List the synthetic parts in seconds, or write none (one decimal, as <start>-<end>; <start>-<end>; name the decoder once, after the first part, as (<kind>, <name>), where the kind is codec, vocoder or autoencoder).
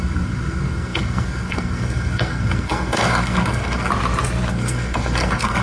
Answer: 0.0-3.9 (codec, SNAC); 4.5-5.6